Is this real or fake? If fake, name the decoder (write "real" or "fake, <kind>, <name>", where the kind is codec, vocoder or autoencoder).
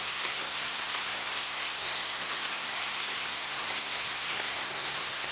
fake, codec, SNAC